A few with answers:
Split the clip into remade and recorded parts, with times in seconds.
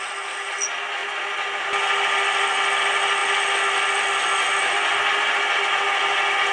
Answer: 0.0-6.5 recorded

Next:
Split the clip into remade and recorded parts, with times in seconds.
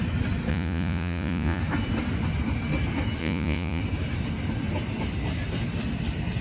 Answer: 0.0-0.5 recorded; 0.5-1.6 remade; 1.6-3.2 recorded; 3.2-3.8 remade; 3.8-6.4 recorded